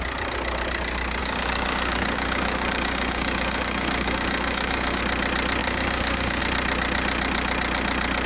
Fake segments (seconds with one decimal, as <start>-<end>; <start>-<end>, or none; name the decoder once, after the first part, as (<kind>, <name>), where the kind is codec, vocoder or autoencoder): 1.2-5.0 (codec, DAC); 5.6-6.4